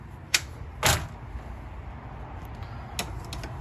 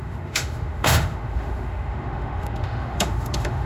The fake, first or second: second